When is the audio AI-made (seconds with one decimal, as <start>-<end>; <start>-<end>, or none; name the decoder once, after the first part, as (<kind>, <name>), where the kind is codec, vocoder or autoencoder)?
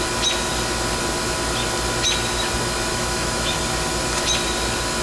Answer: 2.9-3.6 (autoencoder, DAC-VAE)